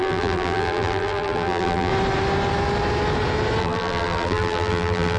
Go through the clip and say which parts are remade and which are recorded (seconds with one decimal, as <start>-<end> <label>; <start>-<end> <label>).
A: 0.0-1.9 remade; 1.9-3.6 recorded; 3.6-5.2 remade